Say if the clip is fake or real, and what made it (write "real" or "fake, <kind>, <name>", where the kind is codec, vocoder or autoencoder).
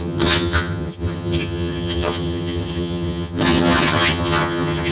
fake, vocoder, HiFi-GAN